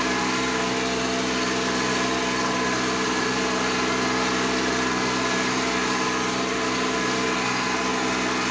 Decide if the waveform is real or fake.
real